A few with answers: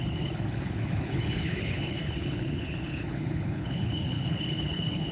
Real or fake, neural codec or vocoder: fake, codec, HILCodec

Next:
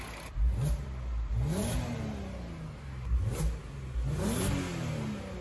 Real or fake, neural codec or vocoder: real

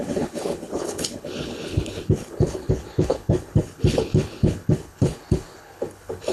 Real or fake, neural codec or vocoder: fake, codec, HILCodec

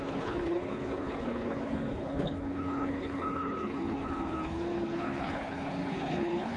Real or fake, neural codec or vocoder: fake, codec, HILCodec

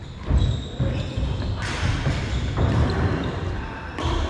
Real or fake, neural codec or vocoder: real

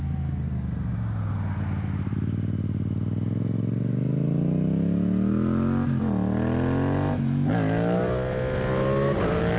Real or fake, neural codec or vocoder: real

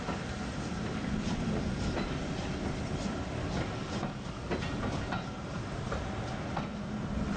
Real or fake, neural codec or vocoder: real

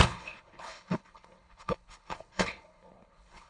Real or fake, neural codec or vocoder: fake, codec, HILCodec